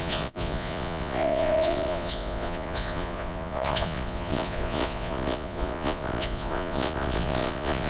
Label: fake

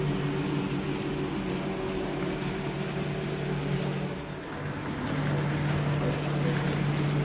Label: real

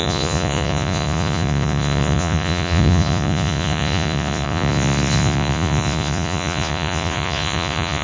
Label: fake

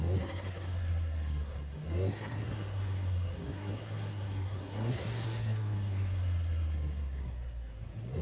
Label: fake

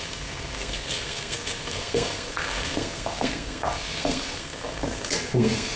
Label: fake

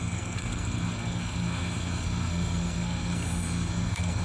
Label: fake